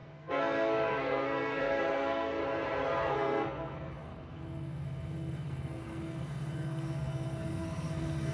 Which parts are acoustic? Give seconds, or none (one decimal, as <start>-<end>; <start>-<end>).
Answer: 2.4-3.1